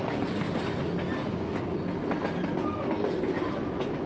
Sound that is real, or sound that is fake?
real